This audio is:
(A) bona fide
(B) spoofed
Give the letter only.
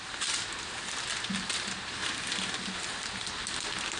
A